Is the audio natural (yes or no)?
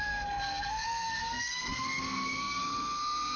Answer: no